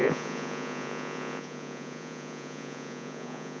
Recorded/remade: remade